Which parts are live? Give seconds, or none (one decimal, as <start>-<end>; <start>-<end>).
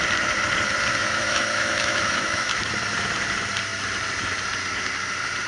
0.0-0.9; 2.6-5.5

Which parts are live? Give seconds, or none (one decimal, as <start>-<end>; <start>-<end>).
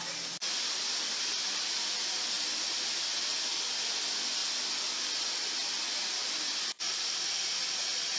0.0-8.2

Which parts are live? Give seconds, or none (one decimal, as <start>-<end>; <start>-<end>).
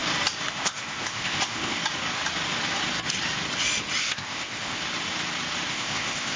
0.0-0.5; 1.8-4.0; 4.8-5.7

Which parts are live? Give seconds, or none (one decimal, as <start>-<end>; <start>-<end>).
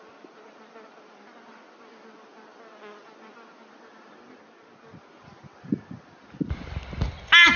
0.0-7.6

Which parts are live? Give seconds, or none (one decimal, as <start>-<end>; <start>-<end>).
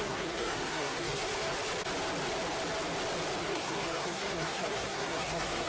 1.2-3.4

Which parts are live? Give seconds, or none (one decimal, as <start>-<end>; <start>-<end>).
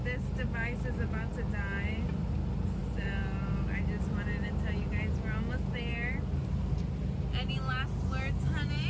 0.0-8.9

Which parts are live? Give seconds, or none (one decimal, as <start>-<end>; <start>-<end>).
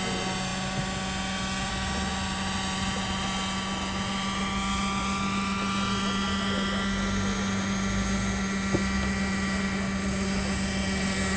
0.0-11.4